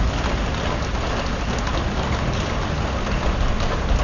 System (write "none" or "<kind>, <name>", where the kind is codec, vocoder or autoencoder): none